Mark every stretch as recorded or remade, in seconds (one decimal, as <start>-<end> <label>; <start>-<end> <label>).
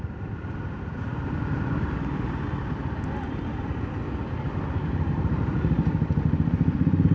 0.0-7.1 recorded